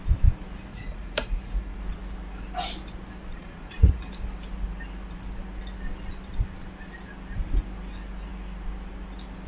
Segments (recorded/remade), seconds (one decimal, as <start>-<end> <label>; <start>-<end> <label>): 0.0-0.7 recorded; 0.7-1.8 remade; 1.8-3.3 recorded; 3.3-4.1 remade; 4.1-9.5 recorded